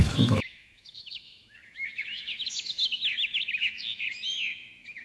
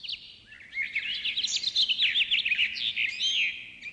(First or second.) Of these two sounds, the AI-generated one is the first